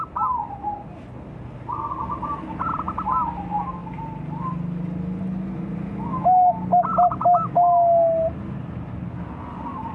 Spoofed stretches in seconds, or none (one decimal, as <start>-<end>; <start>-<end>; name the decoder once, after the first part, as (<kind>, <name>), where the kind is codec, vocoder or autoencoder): none